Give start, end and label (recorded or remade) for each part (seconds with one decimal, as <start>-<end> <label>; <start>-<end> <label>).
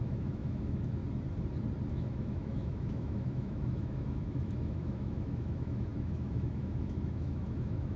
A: 0.0-1.0 remade; 1.0-1.9 recorded; 1.9-8.0 remade